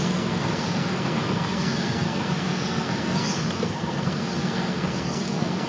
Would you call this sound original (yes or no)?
no